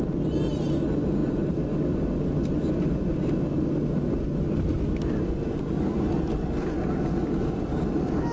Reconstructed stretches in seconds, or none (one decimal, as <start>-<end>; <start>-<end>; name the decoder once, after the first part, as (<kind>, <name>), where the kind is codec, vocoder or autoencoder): none